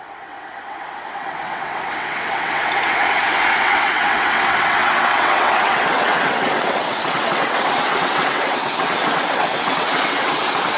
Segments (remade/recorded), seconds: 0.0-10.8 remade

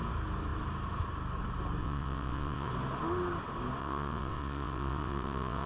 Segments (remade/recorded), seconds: 0.0-1.8 recorded; 1.8-2.7 remade; 2.7-3.8 recorded; 3.8-5.7 remade

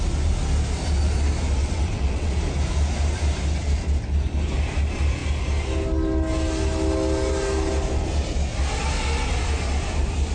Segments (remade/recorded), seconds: 0.0-1.6 recorded; 1.6-2.3 remade; 2.3-10.3 recorded

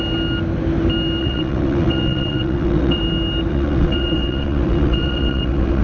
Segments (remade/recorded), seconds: 0.0-1.2 recorded; 1.2-3.0 remade; 3.0-3.5 recorded; 3.5-5.8 remade

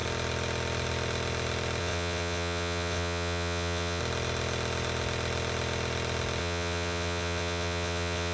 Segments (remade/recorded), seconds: 0.0-1.8 recorded; 1.8-4.0 remade; 4.0-6.4 recorded; 6.4-8.3 remade

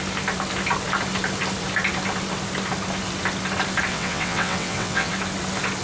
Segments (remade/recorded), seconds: 0.0-3.9 recorded; 3.9-5.1 remade; 5.1-5.8 recorded

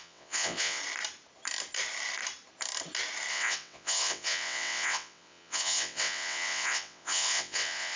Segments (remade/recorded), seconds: 0.0-0.8 remade; 0.8-3.3 recorded; 3.3-8.0 remade

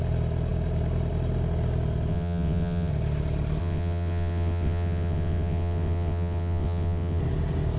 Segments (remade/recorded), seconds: 0.0-2.1 recorded; 2.1-2.9 remade; 2.9-3.6 recorded; 3.6-7.2 remade; 7.2-7.8 recorded